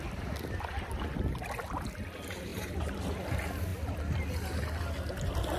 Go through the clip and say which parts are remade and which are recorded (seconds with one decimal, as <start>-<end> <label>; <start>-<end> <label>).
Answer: 0.0-2.5 recorded; 2.5-3.0 remade; 3.0-5.6 recorded